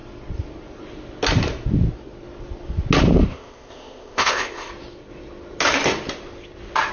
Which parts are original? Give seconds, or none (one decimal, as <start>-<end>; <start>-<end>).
0.0-3.3; 4.7-6.9